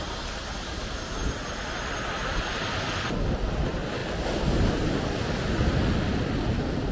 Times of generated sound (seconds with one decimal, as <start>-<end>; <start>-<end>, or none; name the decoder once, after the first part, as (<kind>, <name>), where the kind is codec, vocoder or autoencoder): none